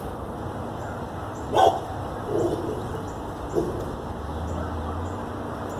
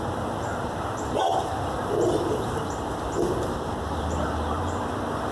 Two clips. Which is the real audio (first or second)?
first